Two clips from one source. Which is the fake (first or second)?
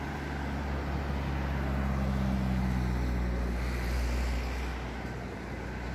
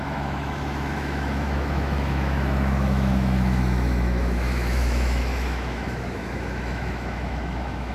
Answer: second